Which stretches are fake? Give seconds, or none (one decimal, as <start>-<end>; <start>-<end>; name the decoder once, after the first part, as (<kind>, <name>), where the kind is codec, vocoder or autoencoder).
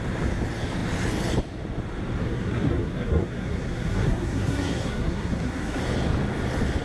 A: 2.2-5.8 (codec, SNAC)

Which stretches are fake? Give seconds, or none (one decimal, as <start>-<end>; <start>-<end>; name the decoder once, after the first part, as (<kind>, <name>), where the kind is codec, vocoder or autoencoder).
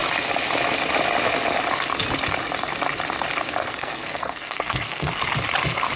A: 3.6-5.2 (codec, SNAC)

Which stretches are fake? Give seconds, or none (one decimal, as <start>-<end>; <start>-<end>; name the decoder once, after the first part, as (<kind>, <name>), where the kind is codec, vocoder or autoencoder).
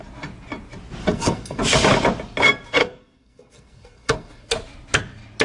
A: 1.0-1.6 (codec, SNAC); 2.8-4.5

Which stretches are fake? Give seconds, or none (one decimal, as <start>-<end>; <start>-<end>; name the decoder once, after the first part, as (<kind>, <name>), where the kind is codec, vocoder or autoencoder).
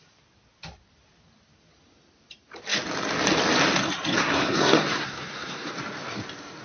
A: 4.2-5.7 (codec, SNAC)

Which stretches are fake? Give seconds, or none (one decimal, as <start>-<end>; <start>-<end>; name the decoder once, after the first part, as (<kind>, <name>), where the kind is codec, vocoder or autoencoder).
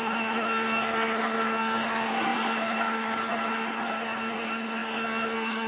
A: 0.0-5.7 (codec, SNAC)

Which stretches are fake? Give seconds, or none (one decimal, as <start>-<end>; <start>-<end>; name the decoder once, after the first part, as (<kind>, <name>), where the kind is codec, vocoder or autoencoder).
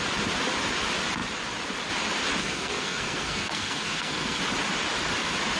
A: 2.4-4.4 (codec, SNAC)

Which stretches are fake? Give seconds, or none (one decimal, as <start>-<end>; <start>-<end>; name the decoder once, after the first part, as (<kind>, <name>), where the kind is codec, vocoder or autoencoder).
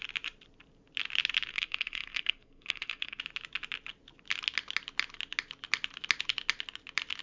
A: 1.5-3.2 (codec, SNAC)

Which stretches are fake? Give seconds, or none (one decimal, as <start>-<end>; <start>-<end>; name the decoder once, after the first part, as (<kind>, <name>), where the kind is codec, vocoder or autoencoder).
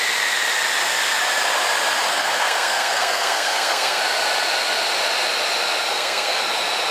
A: 2.1-4.0 (codec, SNAC); 5.9-6.4